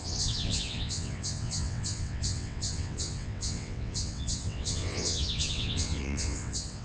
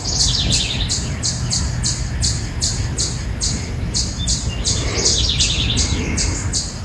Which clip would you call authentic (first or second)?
second